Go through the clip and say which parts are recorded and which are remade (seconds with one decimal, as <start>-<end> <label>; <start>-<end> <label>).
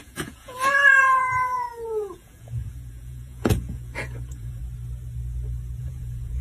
0.0-4.6 remade; 4.6-5.8 recorded; 5.8-6.4 remade